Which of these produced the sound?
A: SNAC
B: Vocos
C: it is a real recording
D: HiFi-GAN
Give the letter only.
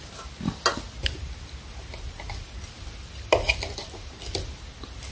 C